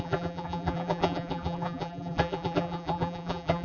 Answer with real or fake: fake